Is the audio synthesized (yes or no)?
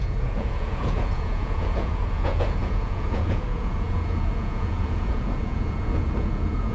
yes